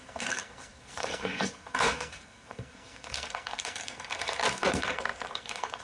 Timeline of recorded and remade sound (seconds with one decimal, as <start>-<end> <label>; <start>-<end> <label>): 0.0-5.8 remade